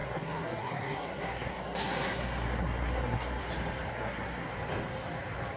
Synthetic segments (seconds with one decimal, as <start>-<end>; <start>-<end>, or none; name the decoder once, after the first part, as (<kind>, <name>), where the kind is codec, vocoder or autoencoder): 0.0-3.4 (codec, SNAC); 3.9-4.5